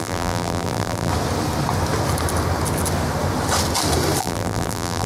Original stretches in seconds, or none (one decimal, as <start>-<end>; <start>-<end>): 1.1-4.2